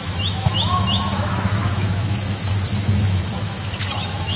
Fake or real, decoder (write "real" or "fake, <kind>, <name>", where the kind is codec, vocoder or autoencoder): fake, autoencoder, DAC-VAE